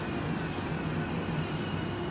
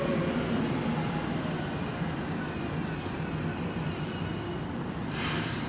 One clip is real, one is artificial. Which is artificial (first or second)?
second